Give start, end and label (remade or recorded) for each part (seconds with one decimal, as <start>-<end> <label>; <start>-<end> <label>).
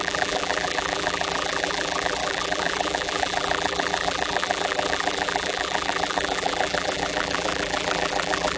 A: 0.0-8.6 remade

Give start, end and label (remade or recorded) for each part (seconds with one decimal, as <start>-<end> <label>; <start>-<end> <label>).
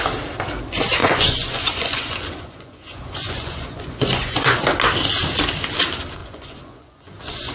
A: 0.0-1.0 recorded; 1.0-4.6 remade; 4.6-6.2 recorded; 6.2-7.5 remade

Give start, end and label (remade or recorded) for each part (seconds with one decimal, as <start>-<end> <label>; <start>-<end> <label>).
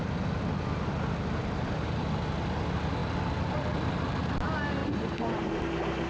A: 0.0-1.4 recorded; 1.4-2.0 remade; 2.0-3.0 recorded; 3.0-4.2 remade; 4.2-4.8 recorded; 4.8-5.6 remade; 5.6-6.1 recorded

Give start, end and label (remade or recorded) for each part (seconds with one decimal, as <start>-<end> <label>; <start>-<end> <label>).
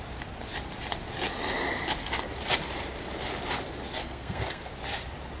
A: 0.0-4.0 recorded; 4.0-4.7 remade; 4.7-5.4 recorded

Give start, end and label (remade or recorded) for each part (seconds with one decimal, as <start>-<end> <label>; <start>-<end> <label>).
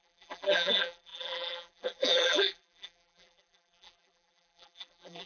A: 0.0-5.3 remade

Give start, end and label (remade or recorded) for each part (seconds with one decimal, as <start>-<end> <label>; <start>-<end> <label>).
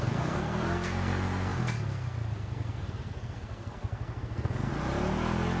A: 0.0-4.7 remade; 4.7-5.6 recorded